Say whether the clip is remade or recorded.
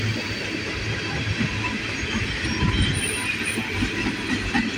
recorded